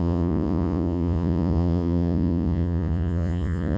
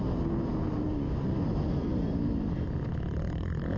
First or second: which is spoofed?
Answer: first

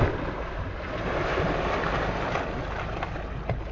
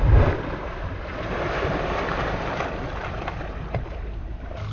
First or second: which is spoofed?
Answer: second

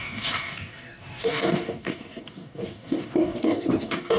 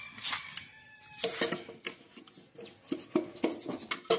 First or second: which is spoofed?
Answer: first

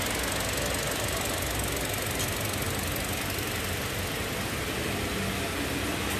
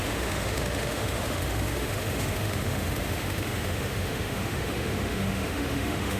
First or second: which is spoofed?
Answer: second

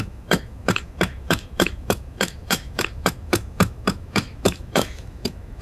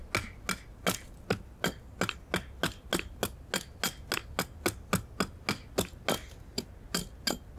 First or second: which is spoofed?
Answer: first